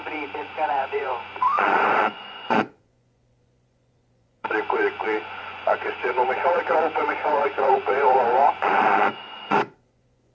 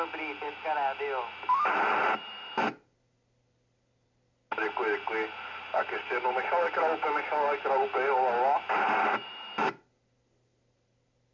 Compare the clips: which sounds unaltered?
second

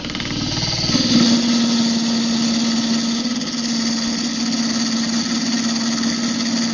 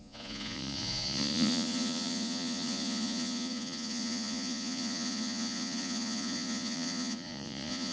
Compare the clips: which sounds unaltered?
first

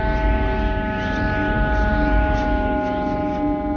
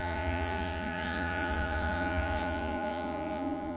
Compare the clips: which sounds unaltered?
first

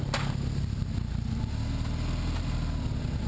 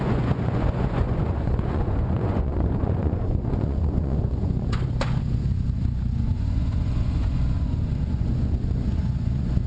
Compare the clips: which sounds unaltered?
first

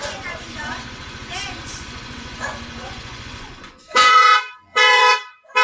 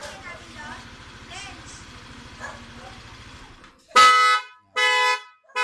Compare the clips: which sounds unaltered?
second